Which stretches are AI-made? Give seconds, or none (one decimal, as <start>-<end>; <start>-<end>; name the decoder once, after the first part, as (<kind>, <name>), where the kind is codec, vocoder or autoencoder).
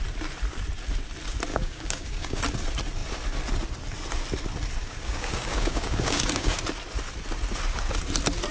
1.5-2.4 (codec, DAC); 4.8-6.6